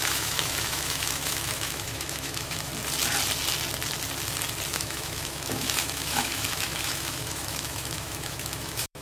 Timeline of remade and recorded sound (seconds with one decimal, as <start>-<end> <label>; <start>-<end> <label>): 0.0-2.7 remade; 2.7-4.7 recorded; 4.7-9.0 remade

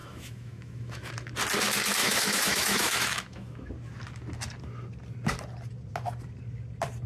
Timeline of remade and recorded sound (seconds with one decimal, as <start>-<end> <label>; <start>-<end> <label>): 0.0-1.1 remade; 1.1-2.0 recorded; 2.0-3.7 remade; 3.7-7.1 recorded

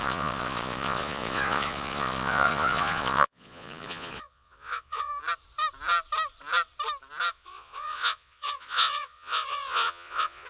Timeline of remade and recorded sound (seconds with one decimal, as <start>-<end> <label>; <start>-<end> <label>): 0.0-5.1 remade; 5.1-7.3 recorded; 7.3-10.5 remade

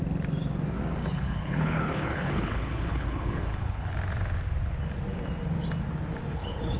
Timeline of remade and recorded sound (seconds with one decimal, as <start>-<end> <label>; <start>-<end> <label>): 0.0-1.0 recorded; 1.0-3.9 remade; 3.9-6.3 recorded; 6.3-6.8 remade

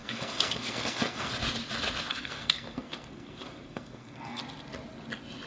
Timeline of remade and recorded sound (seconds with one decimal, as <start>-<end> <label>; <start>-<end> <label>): 0.0-1.3 remade; 1.3-2.1 recorded; 2.1-4.4 remade; 4.4-5.5 recorded

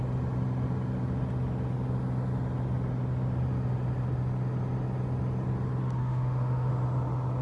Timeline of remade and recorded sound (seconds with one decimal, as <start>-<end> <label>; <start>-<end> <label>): 0.0-6.0 recorded; 6.0-6.7 remade; 6.7-7.4 recorded

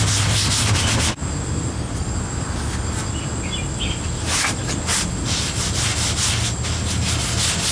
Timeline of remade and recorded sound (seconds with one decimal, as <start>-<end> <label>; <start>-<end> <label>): 0.0-7.7 recorded

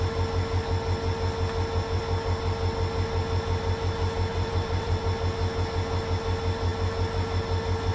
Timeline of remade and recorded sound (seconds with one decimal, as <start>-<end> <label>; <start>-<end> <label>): 0.0-4.3 recorded; 4.3-5.0 remade; 5.0-7.9 recorded